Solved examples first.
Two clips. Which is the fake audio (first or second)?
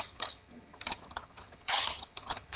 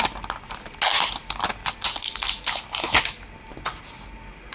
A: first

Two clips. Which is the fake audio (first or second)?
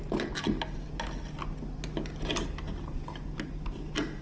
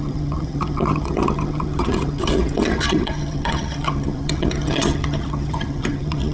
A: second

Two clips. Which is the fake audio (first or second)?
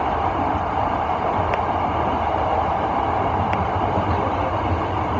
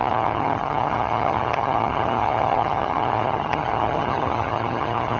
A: second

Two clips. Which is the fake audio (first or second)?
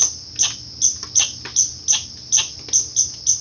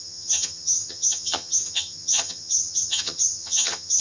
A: second